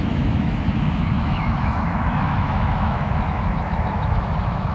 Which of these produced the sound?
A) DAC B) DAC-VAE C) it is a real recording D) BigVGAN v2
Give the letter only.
B